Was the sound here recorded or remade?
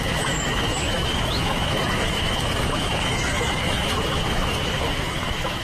remade